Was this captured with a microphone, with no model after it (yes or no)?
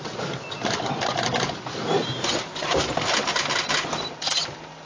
yes